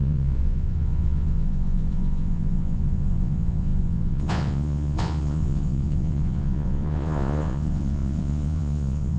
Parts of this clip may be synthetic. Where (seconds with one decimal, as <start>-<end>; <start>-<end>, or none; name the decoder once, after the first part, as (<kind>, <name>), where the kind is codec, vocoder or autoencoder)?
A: 0.0-9.2 (vocoder, Vocos)